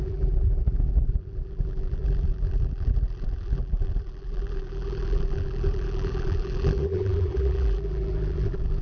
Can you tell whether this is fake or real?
fake